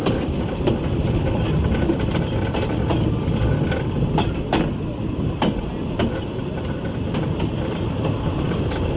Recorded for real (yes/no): yes